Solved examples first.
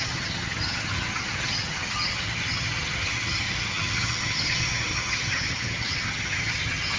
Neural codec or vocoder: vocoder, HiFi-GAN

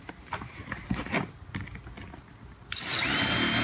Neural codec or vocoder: none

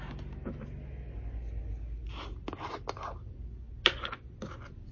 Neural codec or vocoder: none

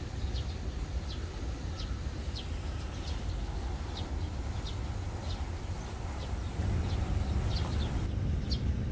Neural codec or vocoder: none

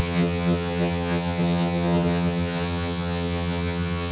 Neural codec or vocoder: vocoder, HiFi-GAN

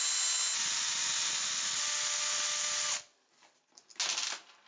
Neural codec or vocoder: none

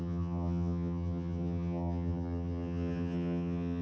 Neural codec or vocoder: vocoder, HiFi-GAN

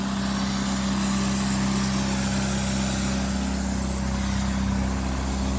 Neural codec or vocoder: none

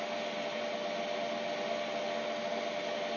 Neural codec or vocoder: none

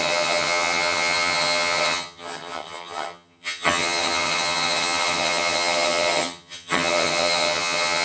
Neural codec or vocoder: vocoder, HiFi-GAN